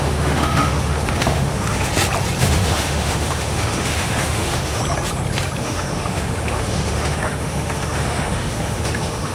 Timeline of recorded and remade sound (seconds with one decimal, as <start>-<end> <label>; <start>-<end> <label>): 0.0-1.9 remade; 1.9-2.4 recorded; 2.4-4.8 remade; 4.8-5.6 recorded; 5.6-9.3 remade